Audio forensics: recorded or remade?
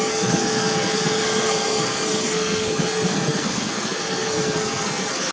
remade